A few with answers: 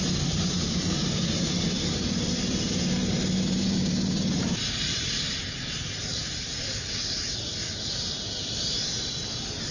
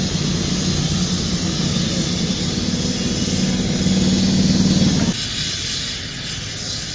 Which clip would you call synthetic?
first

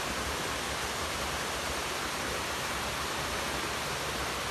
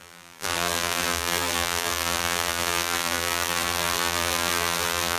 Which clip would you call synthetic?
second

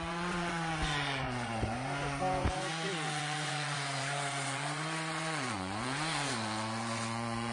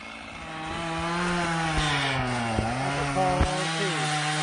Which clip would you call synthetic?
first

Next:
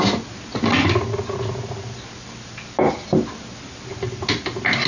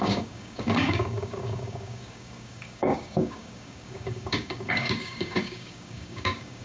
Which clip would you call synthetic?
second